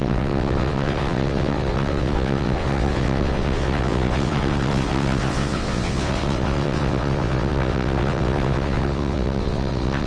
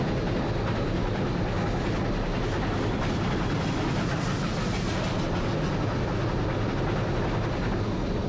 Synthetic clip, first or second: first